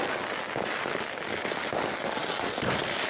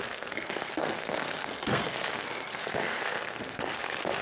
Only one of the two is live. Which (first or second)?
first